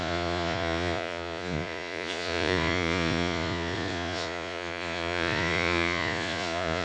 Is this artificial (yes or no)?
yes